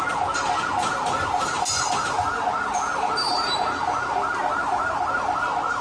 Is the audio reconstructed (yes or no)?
no